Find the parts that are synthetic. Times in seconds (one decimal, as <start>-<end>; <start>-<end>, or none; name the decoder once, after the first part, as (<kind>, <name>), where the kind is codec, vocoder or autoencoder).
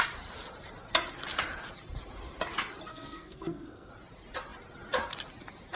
2.9-3.9 (codec, SNAC)